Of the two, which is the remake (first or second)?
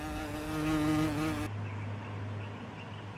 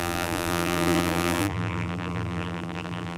second